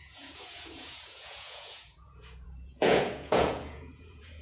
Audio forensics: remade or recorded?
remade